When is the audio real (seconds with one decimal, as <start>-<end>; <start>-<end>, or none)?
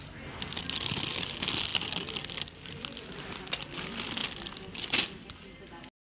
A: 0.0-6.0